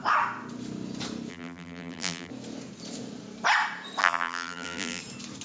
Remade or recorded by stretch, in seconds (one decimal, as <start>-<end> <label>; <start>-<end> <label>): 0.0-1.3 recorded; 1.3-2.3 remade; 2.3-4.0 recorded; 4.0-5.0 remade; 5.0-5.4 recorded